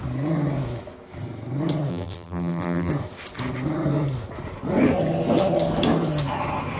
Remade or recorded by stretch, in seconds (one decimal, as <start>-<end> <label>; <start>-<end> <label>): 0.0-1.9 recorded; 1.9-2.9 remade; 2.9-6.8 recorded